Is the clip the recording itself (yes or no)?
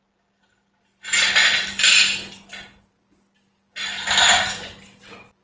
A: yes